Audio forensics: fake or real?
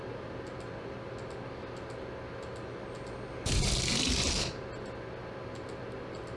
real